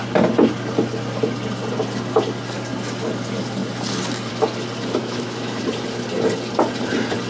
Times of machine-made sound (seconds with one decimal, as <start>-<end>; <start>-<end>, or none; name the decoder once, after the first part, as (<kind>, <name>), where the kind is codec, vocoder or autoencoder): 5.0-5.6 (autoencoder, DAC-VAE)